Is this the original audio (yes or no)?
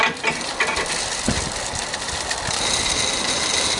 yes